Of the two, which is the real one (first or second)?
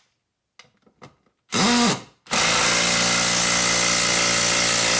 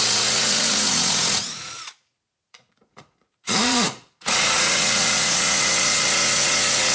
first